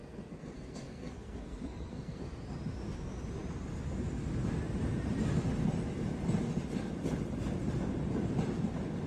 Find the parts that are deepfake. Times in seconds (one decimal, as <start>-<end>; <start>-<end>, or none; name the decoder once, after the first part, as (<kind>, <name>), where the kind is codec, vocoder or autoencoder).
0.0-2.2 (codec, SNAC)